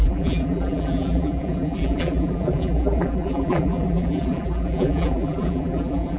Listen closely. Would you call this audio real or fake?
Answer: fake